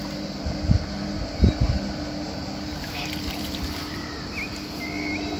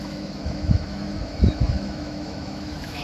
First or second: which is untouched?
first